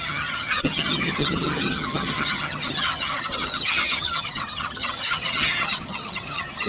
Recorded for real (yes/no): no